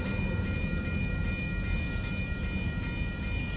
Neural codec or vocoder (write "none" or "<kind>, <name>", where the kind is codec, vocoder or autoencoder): none